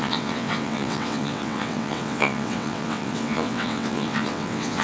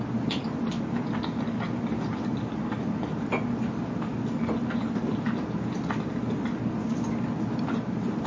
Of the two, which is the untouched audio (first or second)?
second